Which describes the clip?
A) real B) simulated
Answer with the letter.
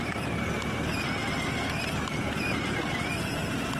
A